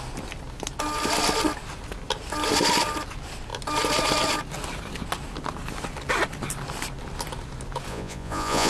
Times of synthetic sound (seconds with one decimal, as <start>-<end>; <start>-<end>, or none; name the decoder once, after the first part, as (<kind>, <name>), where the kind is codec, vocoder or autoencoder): 7.9-8.7 (vocoder, Vocos)